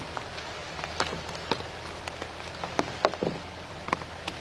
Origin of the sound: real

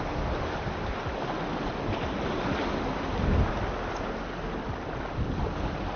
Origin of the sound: real